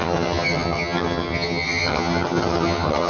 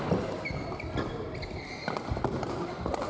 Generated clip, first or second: first